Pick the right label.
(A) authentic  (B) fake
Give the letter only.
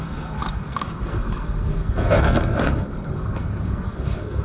B